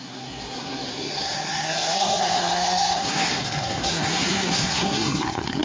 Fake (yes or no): yes